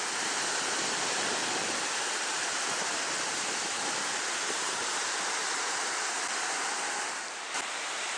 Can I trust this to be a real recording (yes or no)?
no